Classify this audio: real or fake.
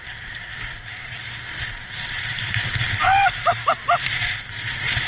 real